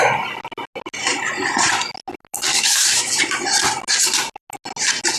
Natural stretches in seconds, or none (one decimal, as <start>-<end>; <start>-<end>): 0.0-2.5; 3.1-5.2